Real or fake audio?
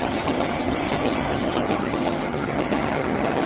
fake